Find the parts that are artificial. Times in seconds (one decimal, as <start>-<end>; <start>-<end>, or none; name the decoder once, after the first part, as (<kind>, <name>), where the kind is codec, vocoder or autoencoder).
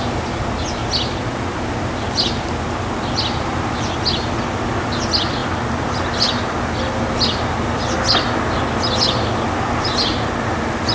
none